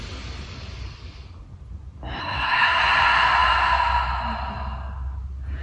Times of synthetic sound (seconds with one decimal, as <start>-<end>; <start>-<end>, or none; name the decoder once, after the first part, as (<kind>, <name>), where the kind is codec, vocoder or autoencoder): 2.2-2.8 (codec, SNAC)